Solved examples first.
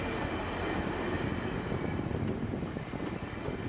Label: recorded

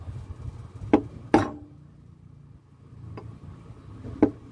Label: recorded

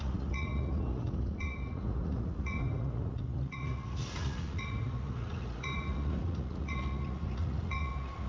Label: remade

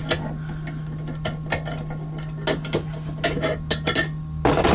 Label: recorded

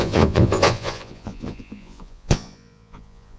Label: remade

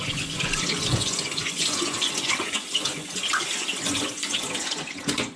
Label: remade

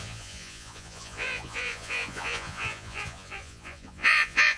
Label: remade